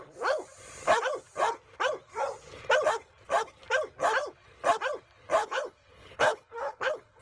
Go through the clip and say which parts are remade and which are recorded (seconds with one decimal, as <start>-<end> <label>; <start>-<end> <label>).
0.0-5.4 recorded; 5.4-7.2 remade